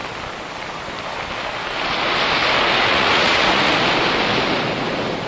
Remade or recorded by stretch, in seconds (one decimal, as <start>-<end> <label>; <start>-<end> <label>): 0.0-2.9 recorded; 2.9-3.7 remade; 3.7-5.3 recorded